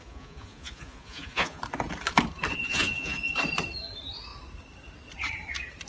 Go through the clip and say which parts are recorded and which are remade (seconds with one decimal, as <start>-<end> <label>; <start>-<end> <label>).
0.0-1.6 remade; 1.6-2.6 recorded; 2.6-3.3 remade; 3.3-5.9 recorded